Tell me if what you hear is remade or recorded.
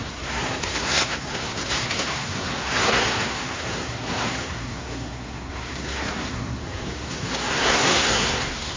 remade